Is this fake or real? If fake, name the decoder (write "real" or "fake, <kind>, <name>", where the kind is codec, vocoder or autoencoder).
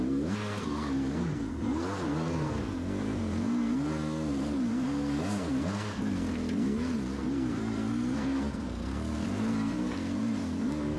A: fake, codec, SNAC